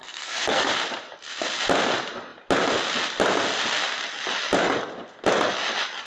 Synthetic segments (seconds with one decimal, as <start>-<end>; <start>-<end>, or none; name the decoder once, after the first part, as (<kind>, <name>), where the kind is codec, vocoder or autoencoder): 0.0-0.7 (codec, SNAC)